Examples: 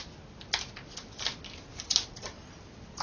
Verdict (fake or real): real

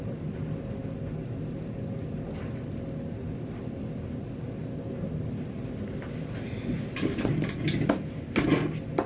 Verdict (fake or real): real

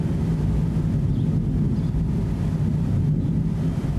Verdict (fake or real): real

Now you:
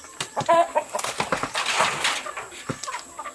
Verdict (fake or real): real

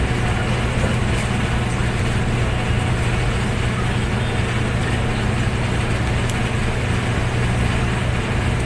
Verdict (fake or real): real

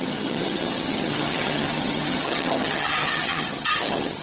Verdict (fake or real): fake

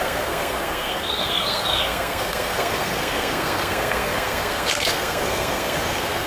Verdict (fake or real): fake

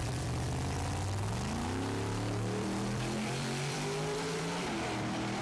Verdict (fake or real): fake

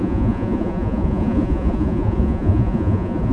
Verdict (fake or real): fake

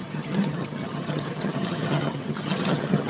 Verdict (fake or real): fake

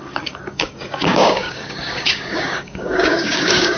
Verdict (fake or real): fake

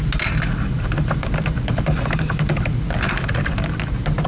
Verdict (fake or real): real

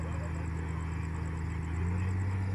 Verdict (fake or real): real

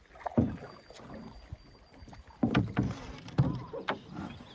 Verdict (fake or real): real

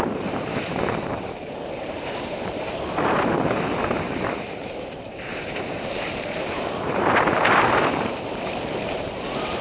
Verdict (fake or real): fake